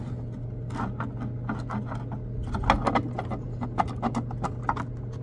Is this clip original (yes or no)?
yes